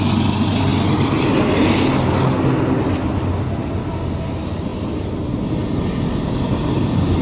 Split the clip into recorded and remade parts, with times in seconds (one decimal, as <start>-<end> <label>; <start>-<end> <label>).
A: 0.0-7.2 recorded